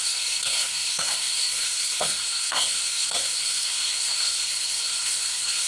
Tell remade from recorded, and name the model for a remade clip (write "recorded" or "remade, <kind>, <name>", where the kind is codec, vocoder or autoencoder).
remade, codec, SNAC